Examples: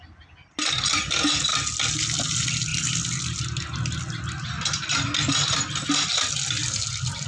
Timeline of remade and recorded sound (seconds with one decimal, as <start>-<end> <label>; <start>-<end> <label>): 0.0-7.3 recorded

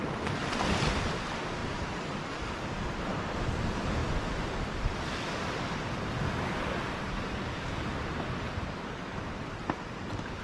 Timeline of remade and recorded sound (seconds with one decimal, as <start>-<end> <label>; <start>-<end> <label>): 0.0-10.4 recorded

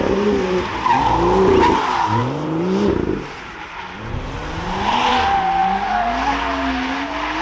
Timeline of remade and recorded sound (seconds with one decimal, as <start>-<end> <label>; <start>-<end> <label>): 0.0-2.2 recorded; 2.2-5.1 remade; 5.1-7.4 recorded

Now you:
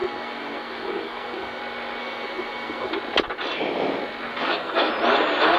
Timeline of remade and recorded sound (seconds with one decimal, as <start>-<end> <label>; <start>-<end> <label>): 0.0-1.6 remade; 1.6-2.0 recorded; 2.0-2.9 remade; 2.9-4.3 recorded; 4.3-4.9 remade; 4.9-5.6 recorded